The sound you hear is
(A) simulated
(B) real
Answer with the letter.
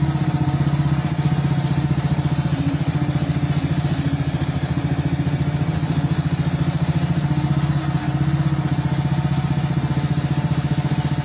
B